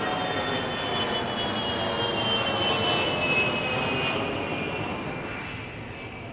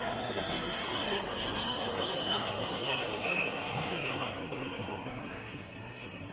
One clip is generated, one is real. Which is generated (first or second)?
second